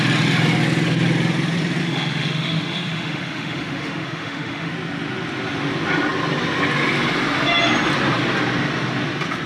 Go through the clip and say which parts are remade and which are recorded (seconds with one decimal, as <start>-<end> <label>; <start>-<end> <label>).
0.0-1.8 recorded; 1.8-4.7 remade; 4.7-9.5 recorded